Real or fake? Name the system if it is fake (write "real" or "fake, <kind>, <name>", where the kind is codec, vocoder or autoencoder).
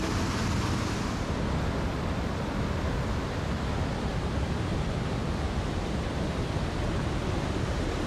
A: fake, vocoder, BigVGAN v2